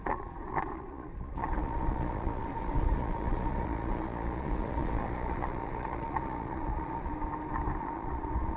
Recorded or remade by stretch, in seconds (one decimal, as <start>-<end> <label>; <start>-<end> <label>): 0.0-7.1 remade; 7.1-7.8 recorded; 7.8-8.6 remade